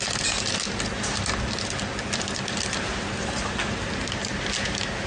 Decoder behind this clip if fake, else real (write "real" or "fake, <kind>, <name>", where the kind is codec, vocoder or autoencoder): real